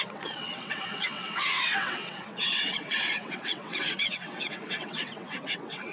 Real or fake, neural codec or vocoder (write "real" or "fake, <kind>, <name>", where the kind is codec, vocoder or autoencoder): fake, vocoder, WaveNeXt